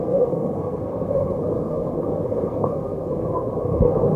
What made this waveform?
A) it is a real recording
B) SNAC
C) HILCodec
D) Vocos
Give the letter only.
B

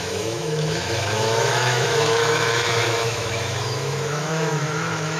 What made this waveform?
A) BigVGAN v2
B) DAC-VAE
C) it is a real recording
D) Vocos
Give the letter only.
B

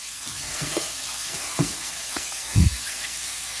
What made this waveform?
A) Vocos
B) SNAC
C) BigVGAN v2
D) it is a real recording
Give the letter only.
B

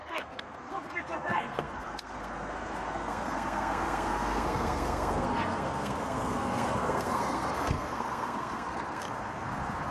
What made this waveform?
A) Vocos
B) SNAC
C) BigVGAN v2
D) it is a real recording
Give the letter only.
B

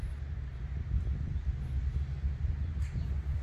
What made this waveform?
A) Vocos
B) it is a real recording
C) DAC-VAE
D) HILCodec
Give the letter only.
B